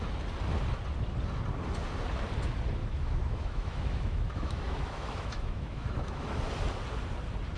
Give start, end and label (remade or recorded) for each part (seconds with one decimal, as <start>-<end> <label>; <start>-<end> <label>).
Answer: 0.0-2.8 recorded; 2.8-6.4 remade; 6.4-7.6 recorded